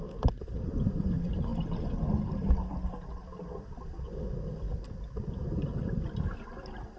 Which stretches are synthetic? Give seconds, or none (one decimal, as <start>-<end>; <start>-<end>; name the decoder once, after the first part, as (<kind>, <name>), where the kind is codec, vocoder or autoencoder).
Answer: none